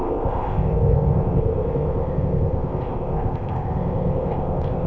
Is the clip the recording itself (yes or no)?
no